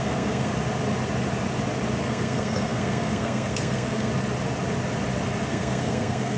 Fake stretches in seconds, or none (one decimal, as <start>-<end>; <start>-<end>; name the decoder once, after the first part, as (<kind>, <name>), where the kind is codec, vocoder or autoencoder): 0.0-0.5 (codec, SNAC); 2.0-4.1; 5.5-6.4